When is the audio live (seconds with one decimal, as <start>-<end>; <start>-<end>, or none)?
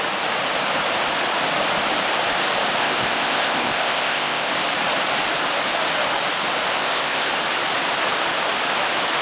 0.0-2.8; 4.5-6.8; 7.3-9.2